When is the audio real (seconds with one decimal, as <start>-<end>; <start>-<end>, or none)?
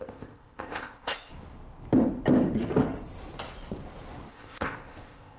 1.3-4.3